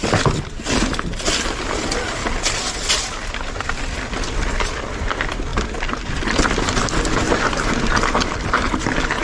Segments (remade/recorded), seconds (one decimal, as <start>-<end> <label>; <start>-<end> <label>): 0.0-9.2 recorded